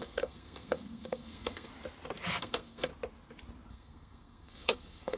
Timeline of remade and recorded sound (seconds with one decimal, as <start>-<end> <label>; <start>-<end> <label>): 0.0-1.7 remade; 1.7-2.4 recorded; 2.4-2.9 remade; 2.9-3.7 recorded; 3.7-5.2 remade